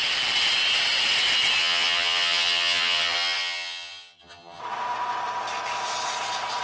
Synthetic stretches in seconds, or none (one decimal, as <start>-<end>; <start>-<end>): 1.6-4.6